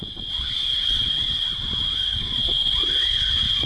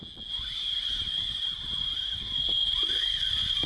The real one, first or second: second